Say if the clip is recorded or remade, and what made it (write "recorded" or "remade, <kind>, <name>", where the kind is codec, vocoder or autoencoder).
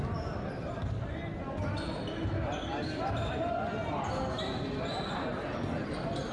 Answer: recorded